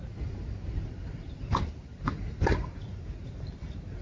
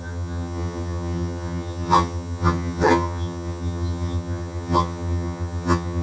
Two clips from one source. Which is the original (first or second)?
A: first